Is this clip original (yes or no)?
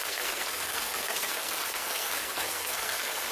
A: no